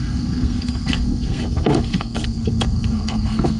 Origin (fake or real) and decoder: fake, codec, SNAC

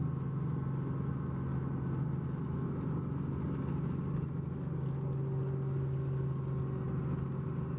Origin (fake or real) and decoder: real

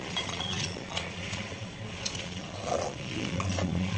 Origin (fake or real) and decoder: fake, vocoder, Vocos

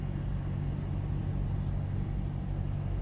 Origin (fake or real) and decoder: real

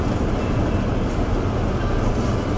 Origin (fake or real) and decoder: real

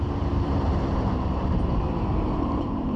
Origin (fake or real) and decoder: fake, vocoder, BigVGAN v2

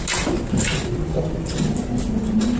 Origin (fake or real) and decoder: real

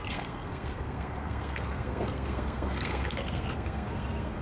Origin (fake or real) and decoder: fake, codec, SNAC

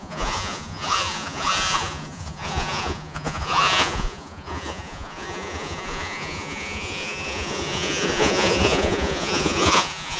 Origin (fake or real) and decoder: fake, vocoder, Vocos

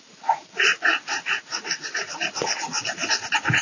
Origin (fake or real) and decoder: fake, vocoder, Vocos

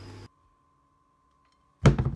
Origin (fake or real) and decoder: real